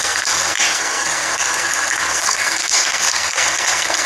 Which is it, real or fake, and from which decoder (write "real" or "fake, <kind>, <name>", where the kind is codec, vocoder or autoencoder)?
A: fake, codec, SNAC